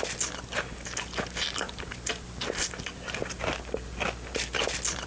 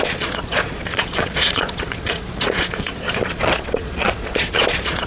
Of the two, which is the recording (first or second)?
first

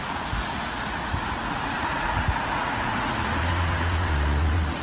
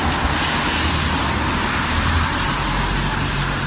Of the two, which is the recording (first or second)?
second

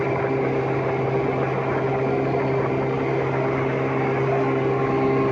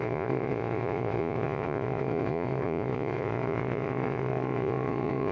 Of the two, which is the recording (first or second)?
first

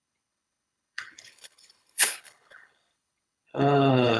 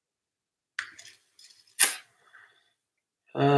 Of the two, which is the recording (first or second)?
second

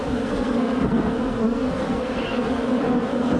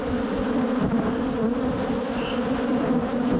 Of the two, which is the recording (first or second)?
second